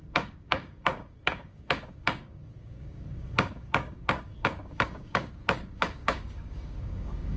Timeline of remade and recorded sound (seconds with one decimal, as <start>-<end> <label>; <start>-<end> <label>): 0.0-7.4 remade